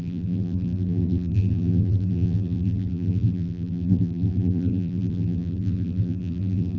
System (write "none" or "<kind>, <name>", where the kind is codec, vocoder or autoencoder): vocoder, BigVGAN v2